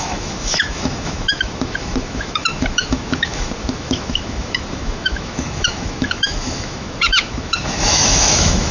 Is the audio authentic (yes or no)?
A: no